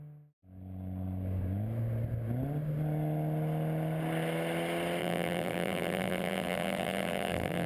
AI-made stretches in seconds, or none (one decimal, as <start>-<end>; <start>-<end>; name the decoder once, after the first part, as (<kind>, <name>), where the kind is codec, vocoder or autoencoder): 5.0-7.7 (vocoder, BigVGAN v2)